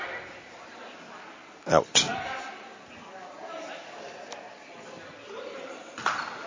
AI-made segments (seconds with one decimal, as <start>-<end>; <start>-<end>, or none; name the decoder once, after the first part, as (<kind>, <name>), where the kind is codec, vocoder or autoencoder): none